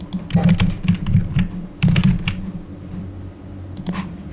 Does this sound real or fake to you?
real